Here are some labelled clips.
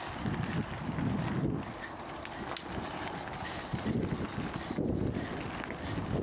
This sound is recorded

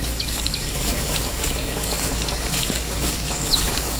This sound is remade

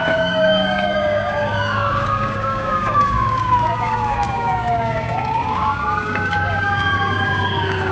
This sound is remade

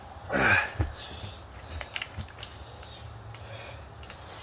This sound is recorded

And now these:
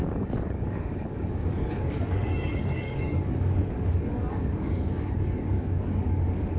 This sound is remade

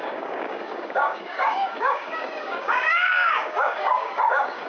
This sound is remade